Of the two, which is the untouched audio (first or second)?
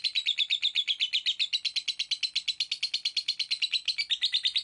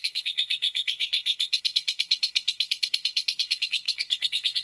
first